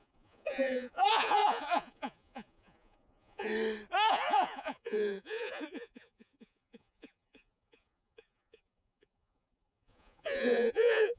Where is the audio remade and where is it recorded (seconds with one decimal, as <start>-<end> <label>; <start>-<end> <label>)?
0.0-3.5 remade; 3.5-4.1 recorded; 4.1-11.2 remade